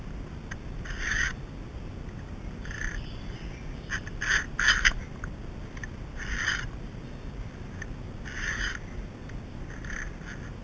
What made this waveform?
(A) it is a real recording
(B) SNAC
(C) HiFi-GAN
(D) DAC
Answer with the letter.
A